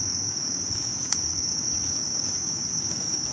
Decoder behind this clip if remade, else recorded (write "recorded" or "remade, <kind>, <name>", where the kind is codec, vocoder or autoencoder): remade, codec, DAC